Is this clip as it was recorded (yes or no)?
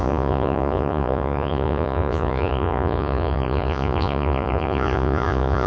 no